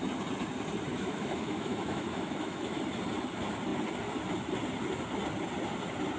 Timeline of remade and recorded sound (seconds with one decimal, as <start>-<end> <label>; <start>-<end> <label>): 0.0-0.9 recorded; 0.9-2.8 remade; 2.8-6.2 recorded